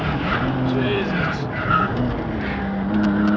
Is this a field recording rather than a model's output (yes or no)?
yes